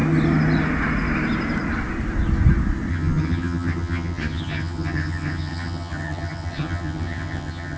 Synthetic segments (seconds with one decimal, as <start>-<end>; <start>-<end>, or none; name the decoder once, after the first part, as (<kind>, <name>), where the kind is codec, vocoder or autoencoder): 2.9-7.8 (vocoder, HiFi-GAN)

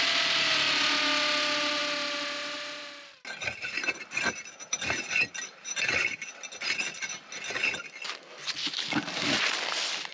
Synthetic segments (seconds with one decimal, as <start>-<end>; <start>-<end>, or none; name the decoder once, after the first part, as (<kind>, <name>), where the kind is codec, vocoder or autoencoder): none

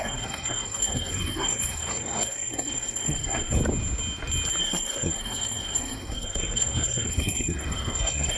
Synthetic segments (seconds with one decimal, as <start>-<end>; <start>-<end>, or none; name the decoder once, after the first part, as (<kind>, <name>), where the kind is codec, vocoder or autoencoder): 0.0-3.6 (codec, SNAC); 4.6-8.4

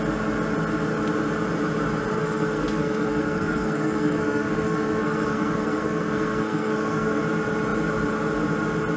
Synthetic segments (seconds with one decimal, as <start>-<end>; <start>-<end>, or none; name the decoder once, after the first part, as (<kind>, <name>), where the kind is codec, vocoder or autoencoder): 2.1-7.2 (codec, SNAC)

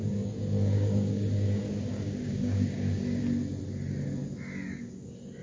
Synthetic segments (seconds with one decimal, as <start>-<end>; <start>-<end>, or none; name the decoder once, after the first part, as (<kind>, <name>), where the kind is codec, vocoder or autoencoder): 0.0-3.2 (codec, DAC)

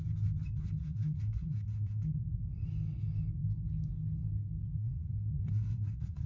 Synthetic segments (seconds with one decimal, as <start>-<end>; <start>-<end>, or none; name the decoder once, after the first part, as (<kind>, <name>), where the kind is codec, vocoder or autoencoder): 0.6-2.2 (codec, SNAC); 4.8-6.3